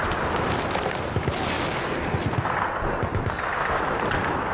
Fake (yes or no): no